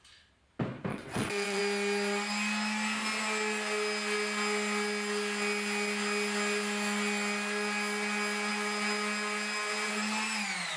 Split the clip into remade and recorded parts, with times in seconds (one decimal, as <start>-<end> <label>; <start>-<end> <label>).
0.0-0.9 recorded; 0.9-1.6 remade; 1.6-10.8 recorded